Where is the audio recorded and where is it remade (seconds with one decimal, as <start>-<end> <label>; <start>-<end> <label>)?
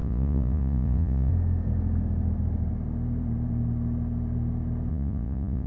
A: 0.0-1.3 remade; 1.3-4.9 recorded; 4.9-5.7 remade